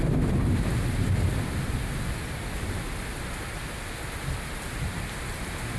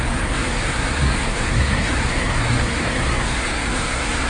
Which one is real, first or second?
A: first